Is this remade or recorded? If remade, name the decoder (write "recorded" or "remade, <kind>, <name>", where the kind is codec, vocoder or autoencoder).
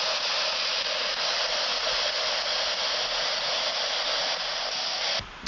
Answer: recorded